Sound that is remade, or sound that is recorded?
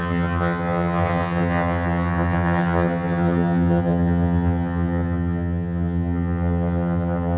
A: remade